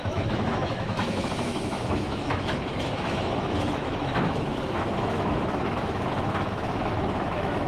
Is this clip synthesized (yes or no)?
yes